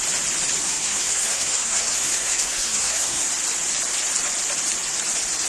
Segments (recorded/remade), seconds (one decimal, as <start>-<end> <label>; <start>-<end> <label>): 0.0-0.6 recorded; 0.6-3.3 remade; 3.3-5.5 recorded